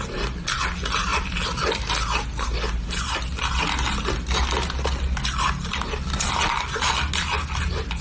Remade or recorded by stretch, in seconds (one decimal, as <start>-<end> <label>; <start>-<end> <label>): 0.0-8.0 recorded